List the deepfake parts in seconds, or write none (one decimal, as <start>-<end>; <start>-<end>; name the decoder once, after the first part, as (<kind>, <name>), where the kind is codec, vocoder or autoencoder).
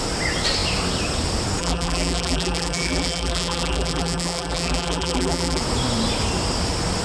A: 1.6-5.6 (vocoder, BigVGAN v2)